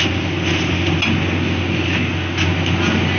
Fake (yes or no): no